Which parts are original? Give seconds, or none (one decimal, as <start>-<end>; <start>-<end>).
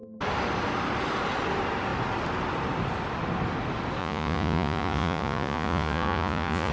0.0-4.0